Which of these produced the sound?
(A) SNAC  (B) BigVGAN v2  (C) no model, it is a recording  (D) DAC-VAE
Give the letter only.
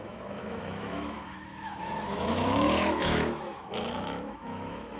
D